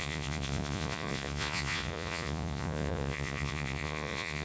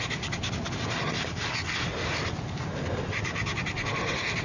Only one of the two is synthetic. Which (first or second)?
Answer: first